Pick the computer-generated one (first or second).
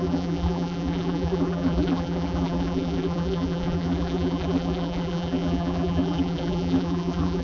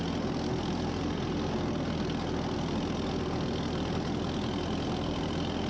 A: first